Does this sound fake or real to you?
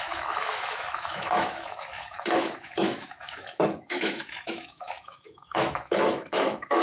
fake